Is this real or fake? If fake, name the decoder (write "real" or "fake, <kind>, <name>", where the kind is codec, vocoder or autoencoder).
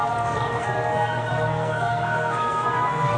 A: fake, codec, SNAC